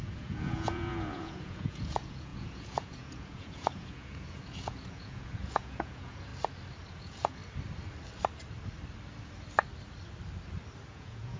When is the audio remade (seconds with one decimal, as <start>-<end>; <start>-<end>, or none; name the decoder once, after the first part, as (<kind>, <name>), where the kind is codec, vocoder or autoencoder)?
0.0-6.3 (vocoder, Vocos); 6.9-7.4; 10.9-11.4